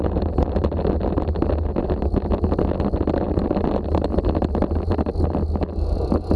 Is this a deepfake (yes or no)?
no